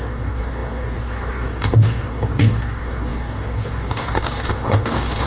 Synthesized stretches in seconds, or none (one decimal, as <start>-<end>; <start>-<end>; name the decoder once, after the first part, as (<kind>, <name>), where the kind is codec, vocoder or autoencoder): 0.0-5.3 (codec, DAC)